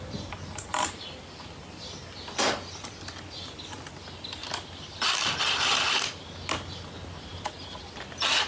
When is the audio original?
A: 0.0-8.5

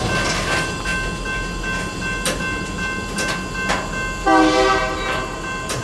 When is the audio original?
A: 0.0-5.8

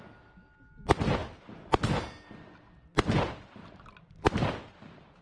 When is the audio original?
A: 0.0-5.2

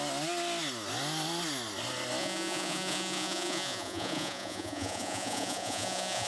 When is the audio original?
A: 0.0-2.2